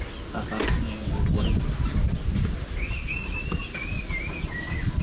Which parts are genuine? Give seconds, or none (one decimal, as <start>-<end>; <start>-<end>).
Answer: 0.0-5.0